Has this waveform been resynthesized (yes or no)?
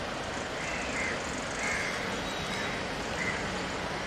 no